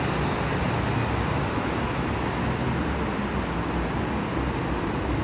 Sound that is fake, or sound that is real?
real